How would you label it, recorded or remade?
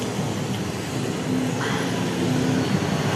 recorded